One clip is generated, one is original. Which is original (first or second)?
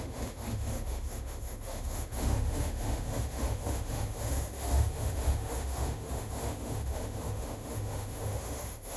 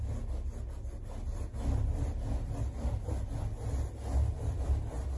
second